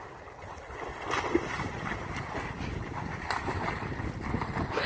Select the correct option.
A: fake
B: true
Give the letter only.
B